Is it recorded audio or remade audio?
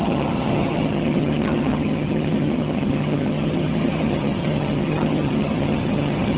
remade